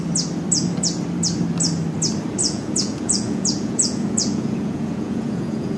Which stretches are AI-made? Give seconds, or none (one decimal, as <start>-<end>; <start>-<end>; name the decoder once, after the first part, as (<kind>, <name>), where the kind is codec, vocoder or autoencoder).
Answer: 2.4-5.8 (vocoder, Vocos)